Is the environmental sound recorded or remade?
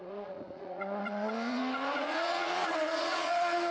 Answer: remade